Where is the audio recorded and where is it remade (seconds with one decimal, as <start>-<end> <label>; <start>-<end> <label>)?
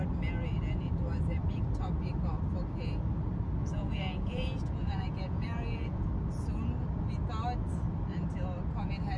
0.0-3.6 recorded; 3.6-6.1 remade; 6.1-9.2 recorded